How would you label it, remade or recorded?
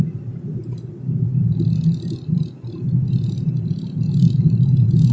recorded